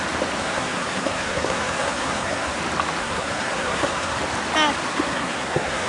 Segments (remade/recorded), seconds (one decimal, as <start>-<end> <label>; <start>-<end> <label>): 0.0-0.4 recorded; 0.4-2.6 remade; 2.6-3.0 recorded; 3.0-4.2 remade; 4.2-4.9 recorded; 4.9-5.9 remade